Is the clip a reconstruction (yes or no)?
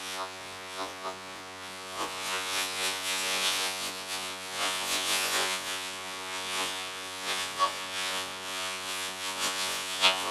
yes